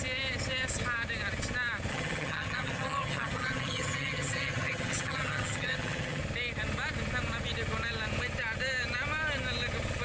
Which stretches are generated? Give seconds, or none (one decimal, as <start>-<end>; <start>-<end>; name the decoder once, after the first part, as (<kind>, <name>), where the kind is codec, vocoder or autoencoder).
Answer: 1.9-6.2 (vocoder, HiFi-GAN)